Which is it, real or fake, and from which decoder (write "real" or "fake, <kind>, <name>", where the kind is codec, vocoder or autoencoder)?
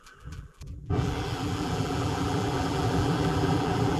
fake, vocoder, BigVGAN v2